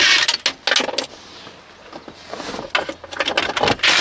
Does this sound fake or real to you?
real